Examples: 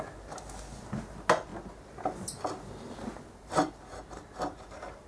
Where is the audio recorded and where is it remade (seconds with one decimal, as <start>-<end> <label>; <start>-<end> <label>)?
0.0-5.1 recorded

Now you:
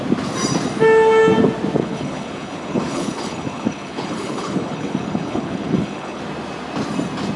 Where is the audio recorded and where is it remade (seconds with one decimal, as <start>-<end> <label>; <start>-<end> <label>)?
0.0-1.8 recorded; 1.8-6.2 remade; 6.2-7.4 recorded

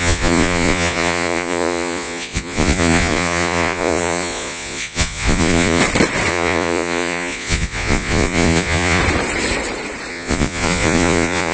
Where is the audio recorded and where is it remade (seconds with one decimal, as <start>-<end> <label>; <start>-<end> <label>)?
0.0-5.8 remade; 5.8-6.3 recorded; 6.3-9.0 remade; 9.0-10.1 recorded; 10.1-11.5 remade

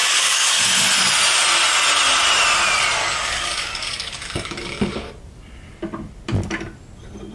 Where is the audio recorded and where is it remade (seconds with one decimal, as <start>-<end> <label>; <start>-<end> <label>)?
0.0-0.6 remade; 0.6-3.0 recorded; 3.0-5.1 remade; 5.1-7.3 recorded

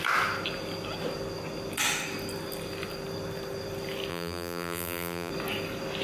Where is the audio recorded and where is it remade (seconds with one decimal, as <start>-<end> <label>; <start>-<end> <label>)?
0.0-4.1 recorded; 4.1-5.3 remade; 5.3-6.0 recorded

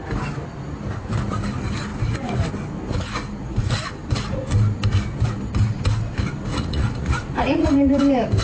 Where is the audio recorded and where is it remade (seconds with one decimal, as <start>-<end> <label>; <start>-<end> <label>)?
0.0-6.5 recorded; 6.5-8.0 remade; 8.0-8.4 recorded

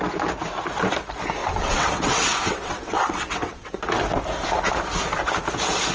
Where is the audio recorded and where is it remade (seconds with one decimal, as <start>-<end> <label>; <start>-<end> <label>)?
0.0-1.4 recorded; 1.4-3.7 remade; 3.7-5.9 recorded

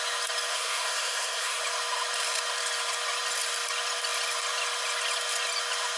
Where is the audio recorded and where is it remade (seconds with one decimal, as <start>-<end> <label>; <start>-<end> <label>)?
0.0-0.5 recorded; 0.5-1.6 remade; 1.6-6.0 recorded